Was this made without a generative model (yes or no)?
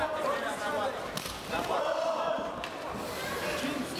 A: no